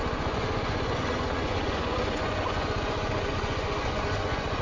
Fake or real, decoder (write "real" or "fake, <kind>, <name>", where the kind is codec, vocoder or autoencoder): fake, vocoder, Vocos